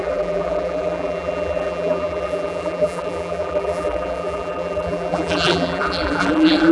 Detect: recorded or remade remade